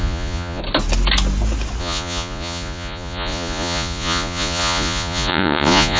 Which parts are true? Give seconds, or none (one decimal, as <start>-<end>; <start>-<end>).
0.6-1.8